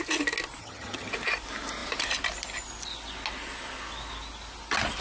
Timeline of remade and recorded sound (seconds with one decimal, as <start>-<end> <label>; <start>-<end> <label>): 0.0-0.6 recorded; 0.6-1.1 remade; 1.1-5.0 recorded